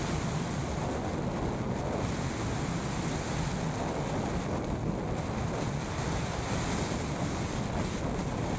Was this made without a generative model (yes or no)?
yes